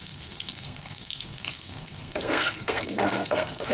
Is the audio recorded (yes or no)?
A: no